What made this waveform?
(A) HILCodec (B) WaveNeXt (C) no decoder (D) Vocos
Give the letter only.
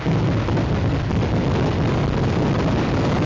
C